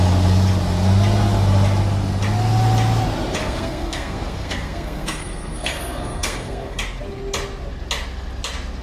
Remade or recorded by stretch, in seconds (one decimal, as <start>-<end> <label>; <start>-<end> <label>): 0.0-3.4 recorded; 3.4-6.8 remade; 6.8-8.8 recorded